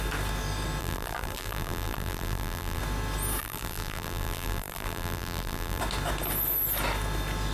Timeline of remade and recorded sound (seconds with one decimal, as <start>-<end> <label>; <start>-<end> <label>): 0.0-0.8 recorded; 0.8-2.8 remade; 2.8-3.4 recorded; 3.4-5.8 remade; 5.8-7.5 recorded